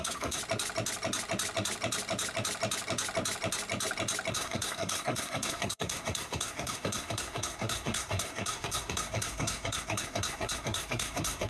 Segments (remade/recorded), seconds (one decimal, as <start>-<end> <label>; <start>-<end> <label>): 0.0-0.4 remade; 0.4-4.3 recorded; 4.3-11.5 remade

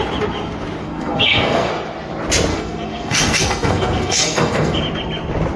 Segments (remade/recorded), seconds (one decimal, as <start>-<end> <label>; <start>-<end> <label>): 0.0-0.8 recorded; 0.8-1.7 remade; 1.7-2.5 recorded; 2.5-4.8 remade; 4.8-5.6 recorded

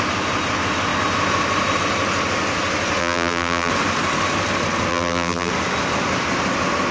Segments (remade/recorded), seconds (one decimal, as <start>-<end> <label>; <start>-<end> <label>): 0.0-3.0 recorded; 3.0-3.7 remade; 3.7-4.9 recorded; 4.9-5.5 remade; 5.5-6.9 recorded